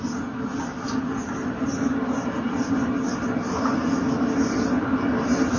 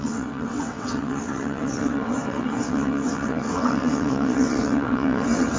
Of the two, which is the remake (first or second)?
second